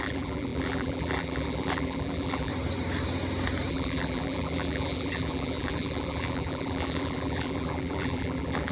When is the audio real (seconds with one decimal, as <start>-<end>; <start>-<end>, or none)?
2.5-3.7